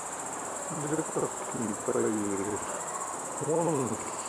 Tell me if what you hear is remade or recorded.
remade